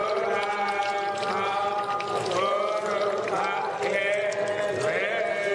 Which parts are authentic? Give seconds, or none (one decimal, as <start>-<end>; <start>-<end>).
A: 0.0-5.5